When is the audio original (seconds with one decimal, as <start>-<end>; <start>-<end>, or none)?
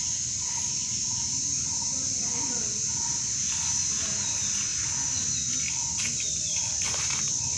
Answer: 0.0-7.6